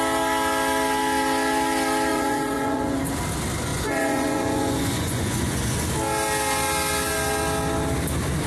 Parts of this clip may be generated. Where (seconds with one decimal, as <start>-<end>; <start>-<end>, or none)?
2.1-3.0; 3.7-5.9